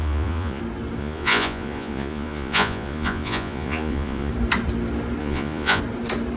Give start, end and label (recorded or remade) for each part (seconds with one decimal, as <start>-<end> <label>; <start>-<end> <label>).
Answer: 0.0-0.6 remade; 0.6-1.0 recorded; 1.0-4.3 remade; 4.3-5.2 recorded; 5.2-5.8 remade; 5.8-6.4 recorded